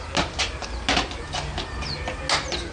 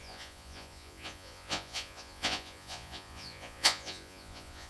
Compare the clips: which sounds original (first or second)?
first